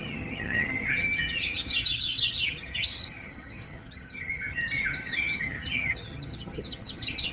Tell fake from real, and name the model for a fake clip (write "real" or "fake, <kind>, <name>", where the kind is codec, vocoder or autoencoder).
fake, vocoder, HiFi-GAN